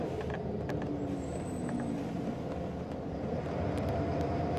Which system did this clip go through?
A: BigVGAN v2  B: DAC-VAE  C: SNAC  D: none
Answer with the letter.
D